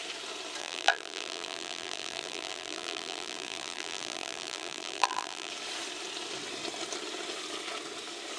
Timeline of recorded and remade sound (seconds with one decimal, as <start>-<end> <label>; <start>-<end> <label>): 0.0-0.6 recorded; 0.6-5.5 remade; 5.5-8.4 recorded